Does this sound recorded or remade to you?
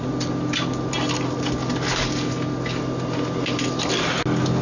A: recorded